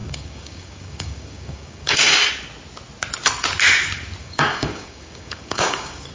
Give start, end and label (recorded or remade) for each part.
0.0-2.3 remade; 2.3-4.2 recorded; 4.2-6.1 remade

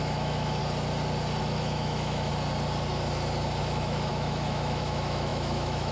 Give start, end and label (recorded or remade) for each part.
0.0-0.6 remade; 0.6-1.4 recorded; 1.4-2.3 remade; 2.3-3.6 recorded; 3.6-5.9 remade

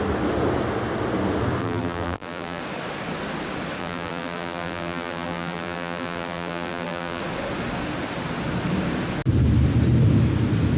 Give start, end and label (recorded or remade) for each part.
0.0-1.6 recorded; 1.6-2.6 remade; 2.6-3.8 recorded; 3.8-7.2 remade; 7.2-10.8 recorded

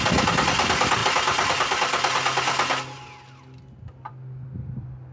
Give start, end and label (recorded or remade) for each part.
0.0-5.1 recorded

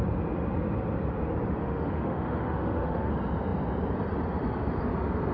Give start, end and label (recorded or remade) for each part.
0.0-1.6 recorded; 1.6-3.1 remade; 3.1-5.3 recorded

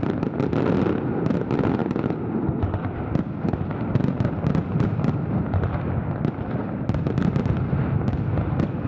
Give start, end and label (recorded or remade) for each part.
0.0-1.8 recorded; 1.8-4.8 remade; 4.8-6.6 recorded; 6.6-7.1 remade; 7.1-8.9 recorded